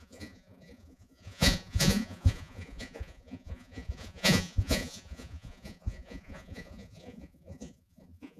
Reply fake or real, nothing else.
fake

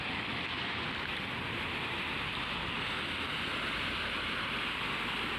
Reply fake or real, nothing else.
real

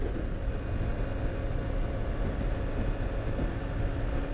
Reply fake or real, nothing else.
real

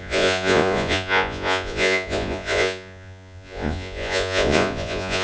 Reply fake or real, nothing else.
fake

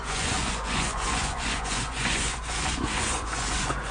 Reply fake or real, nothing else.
fake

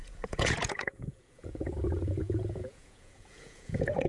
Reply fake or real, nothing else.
fake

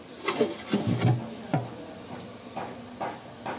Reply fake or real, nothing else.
real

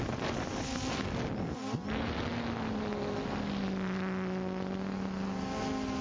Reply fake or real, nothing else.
real